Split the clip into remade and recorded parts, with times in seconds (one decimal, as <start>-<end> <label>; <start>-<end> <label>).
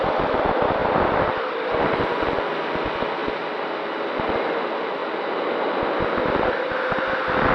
0.0-7.5 recorded